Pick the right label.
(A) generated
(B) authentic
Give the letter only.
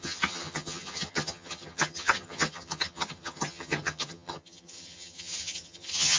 A